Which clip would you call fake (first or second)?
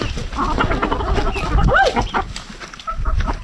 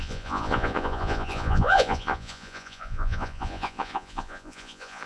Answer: second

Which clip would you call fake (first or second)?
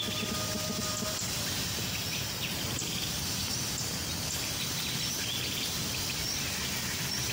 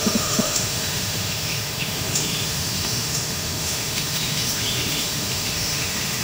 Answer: second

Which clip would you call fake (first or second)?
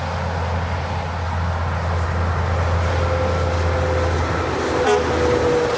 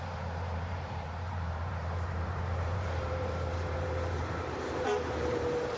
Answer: second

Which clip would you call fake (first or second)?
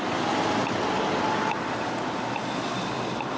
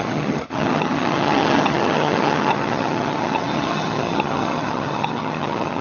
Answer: second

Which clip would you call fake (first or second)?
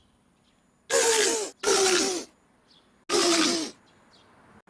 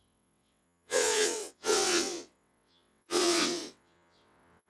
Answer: second